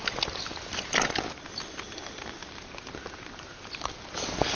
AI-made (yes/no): no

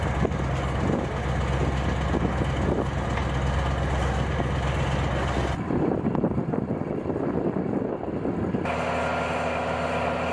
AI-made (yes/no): no